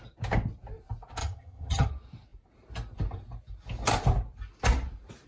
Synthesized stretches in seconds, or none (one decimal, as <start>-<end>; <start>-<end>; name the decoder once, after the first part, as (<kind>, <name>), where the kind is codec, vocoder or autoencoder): 1.2-1.9 (vocoder, HiFi-GAN)